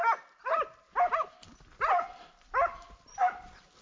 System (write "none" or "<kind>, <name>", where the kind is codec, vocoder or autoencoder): none